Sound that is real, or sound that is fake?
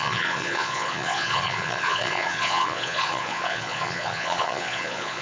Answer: fake